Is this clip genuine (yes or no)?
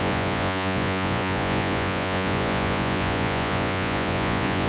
no